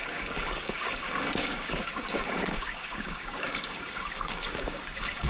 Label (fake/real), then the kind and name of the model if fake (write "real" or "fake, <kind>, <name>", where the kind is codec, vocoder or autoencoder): fake, codec, DAC